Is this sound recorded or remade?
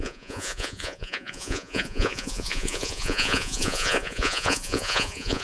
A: remade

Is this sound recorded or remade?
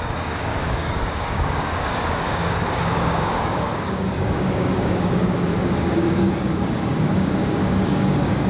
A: remade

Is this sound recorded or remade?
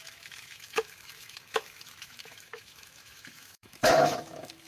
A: remade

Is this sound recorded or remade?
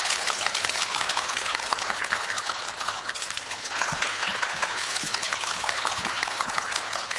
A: remade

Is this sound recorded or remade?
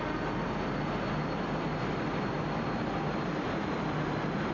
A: recorded